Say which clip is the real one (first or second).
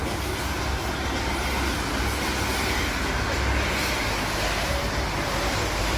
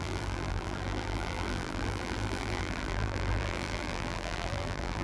first